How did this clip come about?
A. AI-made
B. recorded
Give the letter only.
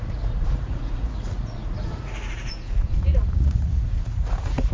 A